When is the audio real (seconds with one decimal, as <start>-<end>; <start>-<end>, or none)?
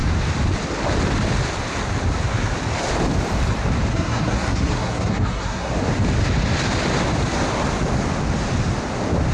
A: 0.0-3.9; 5.7-9.3